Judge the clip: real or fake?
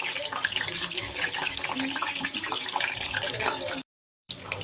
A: fake